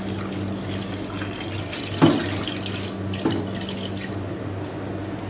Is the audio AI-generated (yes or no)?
no